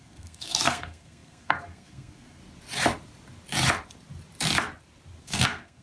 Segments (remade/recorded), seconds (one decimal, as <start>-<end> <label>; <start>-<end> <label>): 0.0-2.4 remade; 2.4-5.2 recorded; 5.2-5.8 remade